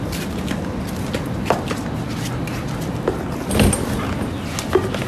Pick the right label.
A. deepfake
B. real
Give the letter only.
B